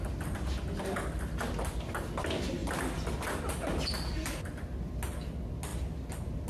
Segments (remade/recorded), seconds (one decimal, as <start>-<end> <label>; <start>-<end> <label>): 0.0-6.5 recorded